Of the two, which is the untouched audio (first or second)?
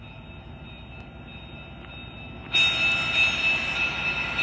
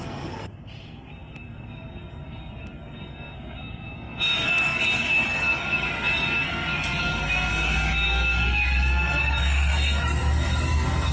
first